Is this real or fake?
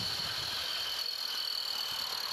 real